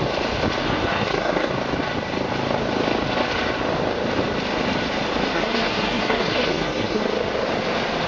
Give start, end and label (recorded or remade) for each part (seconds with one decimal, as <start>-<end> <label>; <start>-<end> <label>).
0.0-0.6 recorded; 0.6-1.5 remade; 1.5-5.3 recorded; 5.3-7.0 remade; 7.0-8.1 recorded